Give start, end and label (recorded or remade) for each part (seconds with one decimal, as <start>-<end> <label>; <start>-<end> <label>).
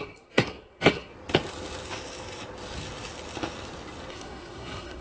0.0-1.1 remade; 1.1-4.1 recorded; 4.1-5.0 remade